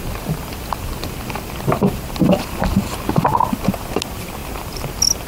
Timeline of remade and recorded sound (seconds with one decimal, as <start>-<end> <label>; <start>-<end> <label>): 0.0-5.3 recorded